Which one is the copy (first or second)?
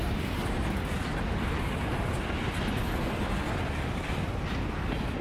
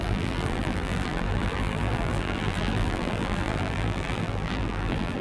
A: second